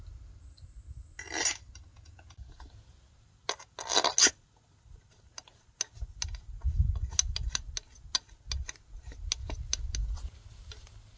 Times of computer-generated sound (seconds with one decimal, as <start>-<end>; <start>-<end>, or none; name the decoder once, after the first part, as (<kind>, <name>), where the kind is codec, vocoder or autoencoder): 1.9-2.5 (vocoder, Vocos)